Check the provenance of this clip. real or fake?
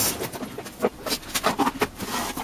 real